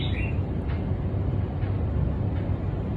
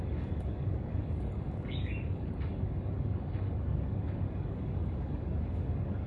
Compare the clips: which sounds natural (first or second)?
first